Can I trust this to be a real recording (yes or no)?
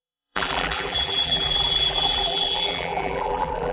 no